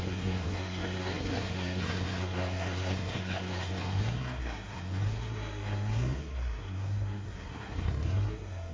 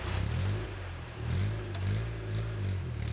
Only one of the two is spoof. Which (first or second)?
first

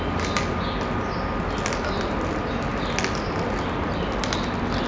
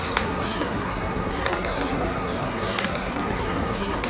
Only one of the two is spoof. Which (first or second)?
second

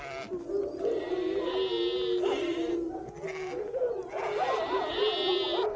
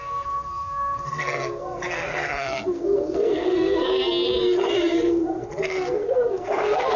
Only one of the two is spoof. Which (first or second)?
second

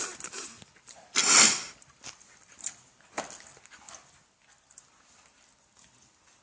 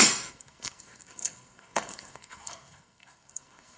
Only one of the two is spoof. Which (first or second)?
second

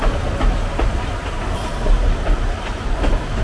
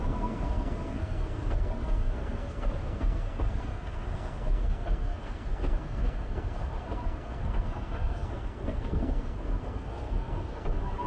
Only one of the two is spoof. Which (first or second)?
second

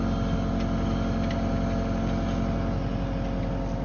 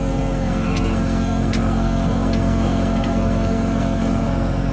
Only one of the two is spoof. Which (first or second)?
second